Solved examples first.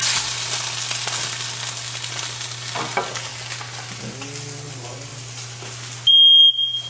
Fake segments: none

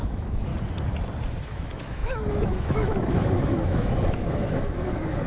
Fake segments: 0.0-0.5 (autoencoder, DAC-VAE); 1.4-5.3

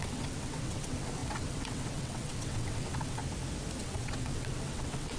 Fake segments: 0.0-3.2 (vocoder, WaveNeXt); 3.8-5.2

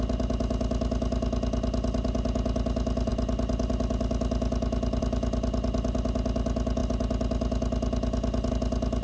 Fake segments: none

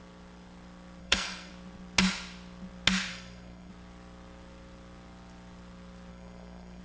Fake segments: 1.0-1.5 (codec, SNAC); 3.1-3.7; 6.1-6.8

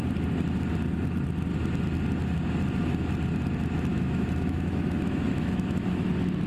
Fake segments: 3.9-6.1 (autoencoder, DAC-VAE)

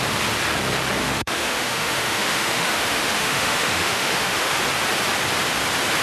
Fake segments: 1.0-4.6 (autoencoder, DAC-VAE)